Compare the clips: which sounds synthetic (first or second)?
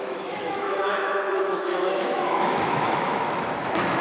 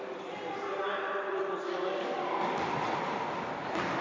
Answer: first